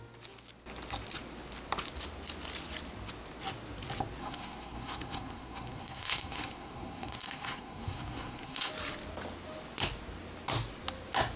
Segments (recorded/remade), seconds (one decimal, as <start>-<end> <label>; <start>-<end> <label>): 0.0-4.2 recorded; 4.2-8.7 remade; 8.7-11.4 recorded